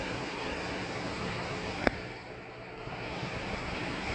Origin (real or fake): fake